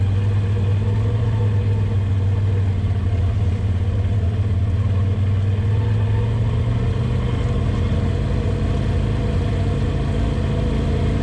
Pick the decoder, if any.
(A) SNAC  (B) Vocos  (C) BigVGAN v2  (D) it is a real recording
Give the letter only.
D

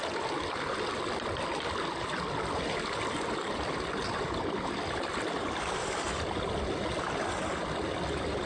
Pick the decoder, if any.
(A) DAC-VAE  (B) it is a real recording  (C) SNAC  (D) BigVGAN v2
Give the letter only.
B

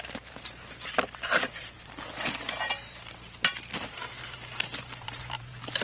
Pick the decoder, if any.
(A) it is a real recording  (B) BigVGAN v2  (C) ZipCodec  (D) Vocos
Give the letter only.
B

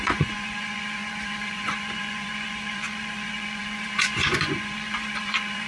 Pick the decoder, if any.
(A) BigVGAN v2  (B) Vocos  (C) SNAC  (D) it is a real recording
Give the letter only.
B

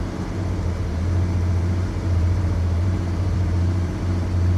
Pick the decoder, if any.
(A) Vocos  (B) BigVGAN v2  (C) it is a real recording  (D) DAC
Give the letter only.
B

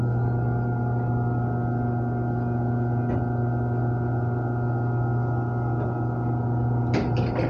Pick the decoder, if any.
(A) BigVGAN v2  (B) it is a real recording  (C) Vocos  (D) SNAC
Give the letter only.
B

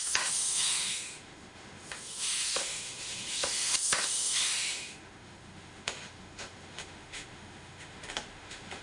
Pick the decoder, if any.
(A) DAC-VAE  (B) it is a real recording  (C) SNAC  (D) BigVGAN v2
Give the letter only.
A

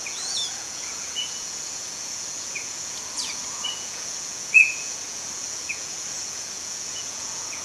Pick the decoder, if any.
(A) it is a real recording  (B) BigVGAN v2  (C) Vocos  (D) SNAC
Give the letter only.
C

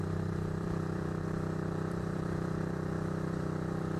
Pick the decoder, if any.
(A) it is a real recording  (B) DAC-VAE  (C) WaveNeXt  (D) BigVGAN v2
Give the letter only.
D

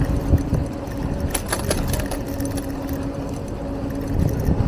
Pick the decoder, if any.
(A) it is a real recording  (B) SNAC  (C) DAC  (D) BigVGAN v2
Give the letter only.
A